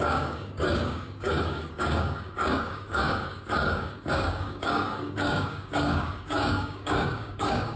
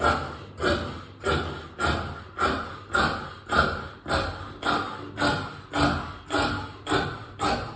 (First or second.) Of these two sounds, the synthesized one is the first